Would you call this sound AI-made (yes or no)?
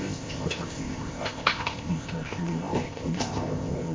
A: yes